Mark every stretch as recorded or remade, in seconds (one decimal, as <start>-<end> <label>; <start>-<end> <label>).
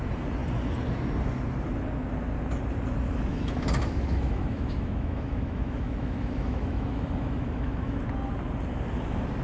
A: 0.0-3.3 recorded; 3.3-8.0 remade; 8.0-9.4 recorded